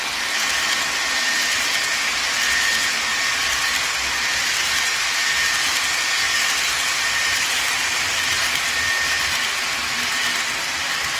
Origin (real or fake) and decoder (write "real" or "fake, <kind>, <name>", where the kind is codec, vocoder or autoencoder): real